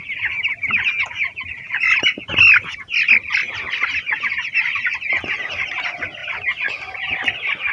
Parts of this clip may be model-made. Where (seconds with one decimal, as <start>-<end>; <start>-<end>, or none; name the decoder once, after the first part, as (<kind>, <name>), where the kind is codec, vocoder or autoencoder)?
none